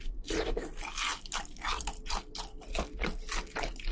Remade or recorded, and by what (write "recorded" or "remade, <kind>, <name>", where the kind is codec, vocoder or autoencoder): recorded